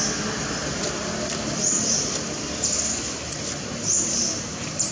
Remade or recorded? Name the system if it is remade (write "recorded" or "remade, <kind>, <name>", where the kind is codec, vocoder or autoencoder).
recorded